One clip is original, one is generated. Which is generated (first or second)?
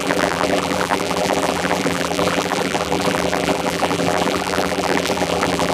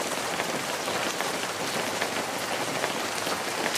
first